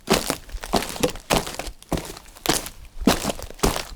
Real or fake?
real